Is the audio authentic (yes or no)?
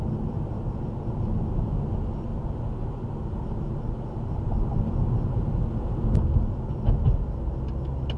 yes